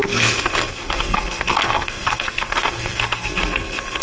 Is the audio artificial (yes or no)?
yes